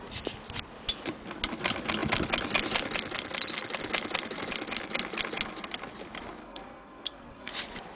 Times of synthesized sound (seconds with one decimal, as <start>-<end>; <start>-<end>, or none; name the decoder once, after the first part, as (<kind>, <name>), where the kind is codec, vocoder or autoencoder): 6.4-7.5 (codec, SNAC)